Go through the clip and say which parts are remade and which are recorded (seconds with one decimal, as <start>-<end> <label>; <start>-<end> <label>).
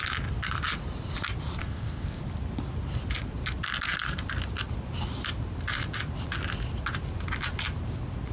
0.0-1.6 recorded; 1.6-2.2 remade; 2.2-8.3 recorded